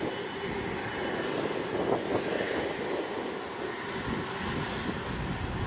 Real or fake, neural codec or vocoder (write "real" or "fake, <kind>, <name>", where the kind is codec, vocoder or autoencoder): real